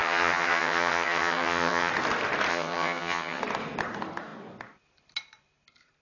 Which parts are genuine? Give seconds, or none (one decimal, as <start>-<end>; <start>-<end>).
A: 1.9-2.5; 3.4-6.0